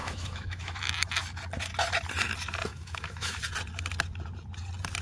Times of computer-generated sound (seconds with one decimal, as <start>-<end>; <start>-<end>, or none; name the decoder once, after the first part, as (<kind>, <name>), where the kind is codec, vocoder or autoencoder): 0.0-0.8 (autoencoder, DAC-VAE); 2.7-3.4